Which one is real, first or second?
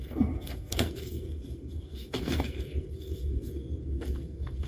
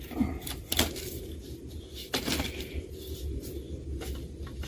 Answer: second